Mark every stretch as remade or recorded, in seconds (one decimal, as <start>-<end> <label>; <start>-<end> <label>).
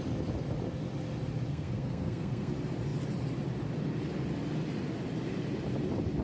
0.0-1.5 recorded; 1.5-2.5 remade; 2.5-6.2 recorded